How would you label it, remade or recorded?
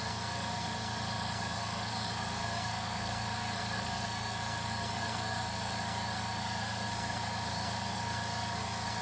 remade